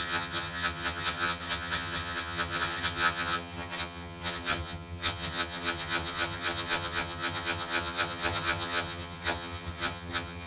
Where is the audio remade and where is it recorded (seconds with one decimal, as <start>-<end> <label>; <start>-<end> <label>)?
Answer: 0.0-10.5 remade